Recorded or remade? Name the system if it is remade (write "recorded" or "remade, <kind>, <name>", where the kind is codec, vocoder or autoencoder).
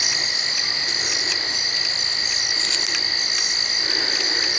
recorded